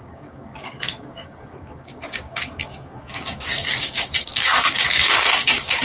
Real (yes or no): no